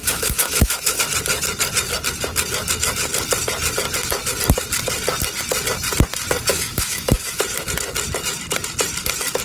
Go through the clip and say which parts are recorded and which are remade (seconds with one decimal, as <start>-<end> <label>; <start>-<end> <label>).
0.0-1.0 remade; 1.0-6.5 recorded; 6.5-7.4 remade; 7.4-9.4 recorded